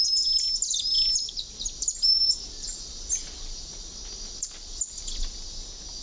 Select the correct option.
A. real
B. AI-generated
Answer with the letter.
A